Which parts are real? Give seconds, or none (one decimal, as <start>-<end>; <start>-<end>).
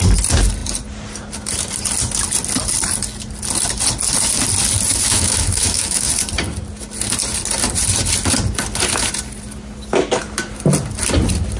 0.0-4.9; 6.1-11.6